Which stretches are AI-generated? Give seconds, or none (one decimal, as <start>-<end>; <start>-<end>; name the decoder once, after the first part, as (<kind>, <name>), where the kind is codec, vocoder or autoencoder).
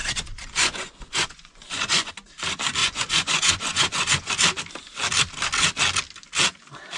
0.0-2.1 (vocoder, Vocos); 2.8-4.3